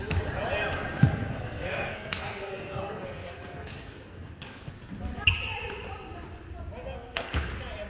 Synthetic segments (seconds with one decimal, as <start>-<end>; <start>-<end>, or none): 1.1-4.7; 6.8-7.5